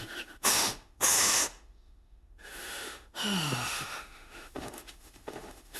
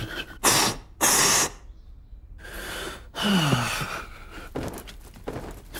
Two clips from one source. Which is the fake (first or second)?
first